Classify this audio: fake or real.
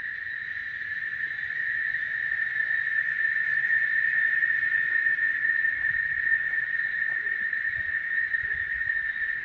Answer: fake